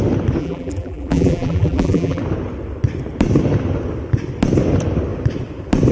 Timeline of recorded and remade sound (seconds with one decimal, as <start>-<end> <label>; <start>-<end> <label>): 0.0-0.4 recorded; 0.4-2.2 remade; 2.2-5.9 recorded